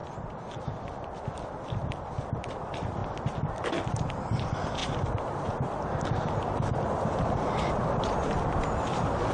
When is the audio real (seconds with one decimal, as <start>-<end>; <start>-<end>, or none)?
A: 0.0-1.2; 3.0-3.7; 4.8-7.7